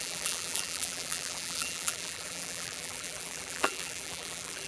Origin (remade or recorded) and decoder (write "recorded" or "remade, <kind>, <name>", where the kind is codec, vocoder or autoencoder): remade, vocoder, BigVGAN v2